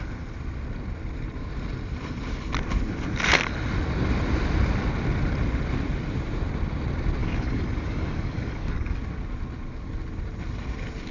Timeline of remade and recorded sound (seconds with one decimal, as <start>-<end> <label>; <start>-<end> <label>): 0.0-7.2 recorded; 7.2-9.0 remade; 9.0-11.1 recorded